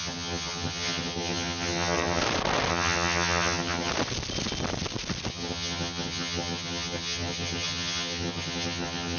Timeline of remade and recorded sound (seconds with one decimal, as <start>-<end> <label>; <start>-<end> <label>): 0.0-2.2 remade; 2.2-2.7 recorded; 2.7-3.9 remade; 3.9-5.3 recorded; 5.3-9.2 remade